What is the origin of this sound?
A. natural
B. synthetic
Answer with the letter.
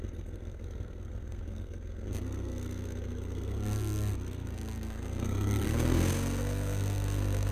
B